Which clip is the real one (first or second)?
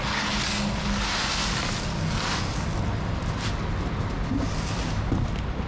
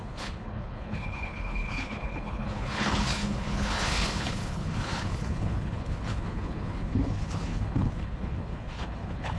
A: first